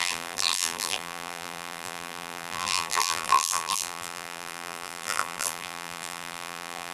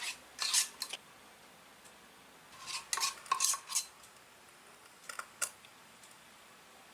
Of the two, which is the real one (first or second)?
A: second